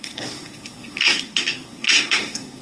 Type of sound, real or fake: fake